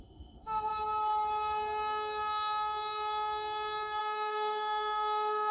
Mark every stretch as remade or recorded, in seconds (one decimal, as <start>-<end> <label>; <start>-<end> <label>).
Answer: 0.0-0.7 remade; 0.7-4.0 recorded; 4.0-5.5 remade